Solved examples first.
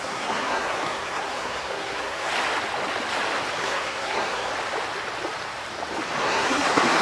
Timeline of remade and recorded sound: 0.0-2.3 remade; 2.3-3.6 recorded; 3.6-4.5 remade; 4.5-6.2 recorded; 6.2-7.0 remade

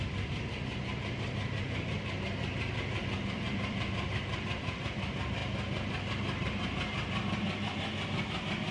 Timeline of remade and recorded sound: 0.0-0.7 remade; 0.7-3.3 recorded; 3.3-5.4 remade; 5.4-8.7 recorded

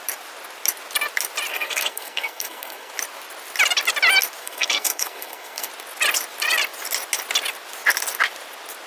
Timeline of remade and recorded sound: 0.0-1.5 recorded; 1.5-2.9 remade; 2.9-4.4 recorded; 4.4-5.7 remade; 5.7-8.9 recorded

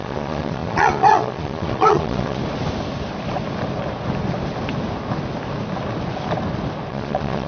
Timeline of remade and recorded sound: 0.0-2.4 remade; 2.4-6.9 recorded; 6.9-7.5 remade

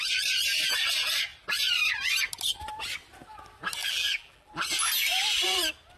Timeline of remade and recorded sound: 0.0-3.8 recorded; 3.8-4.5 remade; 4.5-6.0 recorded

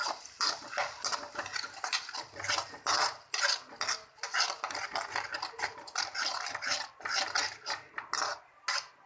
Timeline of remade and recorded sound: 0.0-0.5 remade; 0.5-1.1 recorded; 1.1-4.1 remade; 4.1-9.1 recorded

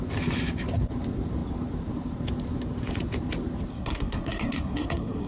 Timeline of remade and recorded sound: 0.0-3.7 recorded; 3.7-5.3 remade

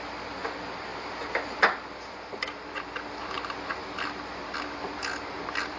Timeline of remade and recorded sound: 0.0-5.8 recorded